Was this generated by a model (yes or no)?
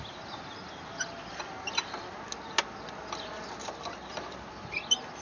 no